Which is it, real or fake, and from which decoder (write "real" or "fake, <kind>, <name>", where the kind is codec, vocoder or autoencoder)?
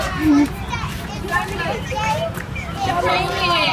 fake, vocoder, BigVGAN v2